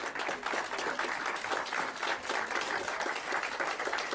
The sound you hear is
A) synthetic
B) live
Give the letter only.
B